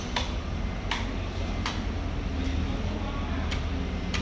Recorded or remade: recorded